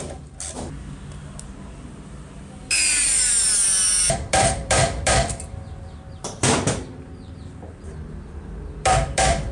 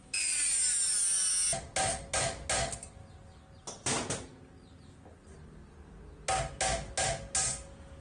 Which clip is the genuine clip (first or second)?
second